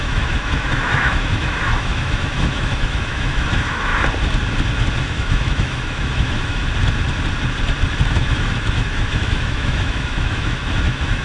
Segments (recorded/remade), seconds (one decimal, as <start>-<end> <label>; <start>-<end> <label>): 0.0-3.9 remade; 3.9-5.0 recorded; 5.0-6.6 remade; 6.6-8.1 recorded; 8.1-11.2 remade